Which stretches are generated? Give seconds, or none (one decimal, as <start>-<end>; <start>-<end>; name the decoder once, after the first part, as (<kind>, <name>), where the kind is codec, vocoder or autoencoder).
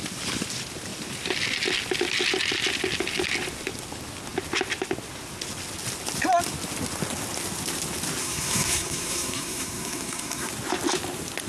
8.2-10.5 (codec, SNAC)